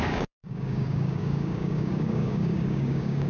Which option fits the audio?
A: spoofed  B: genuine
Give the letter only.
A